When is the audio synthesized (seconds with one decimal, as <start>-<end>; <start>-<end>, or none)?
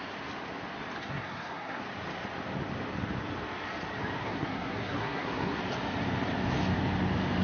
1.0-1.8; 4.2-5.6